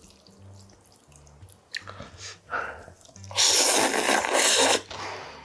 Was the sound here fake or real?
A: real